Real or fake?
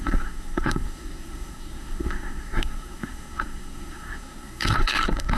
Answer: fake